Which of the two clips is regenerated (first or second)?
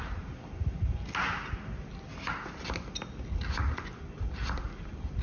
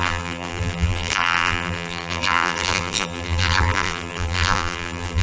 second